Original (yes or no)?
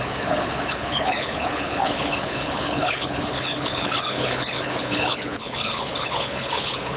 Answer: no